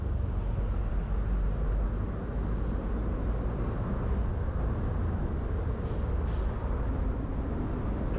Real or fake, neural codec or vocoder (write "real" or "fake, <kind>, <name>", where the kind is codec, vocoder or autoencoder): real